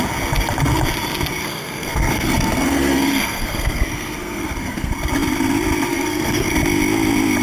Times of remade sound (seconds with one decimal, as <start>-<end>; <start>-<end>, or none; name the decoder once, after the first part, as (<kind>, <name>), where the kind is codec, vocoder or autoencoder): 1.4-4.9 (codec, SNAC); 5.9-6.5